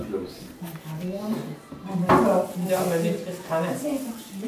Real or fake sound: real